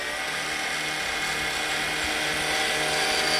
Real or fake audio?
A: real